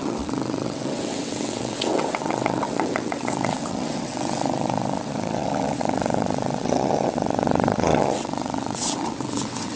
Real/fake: fake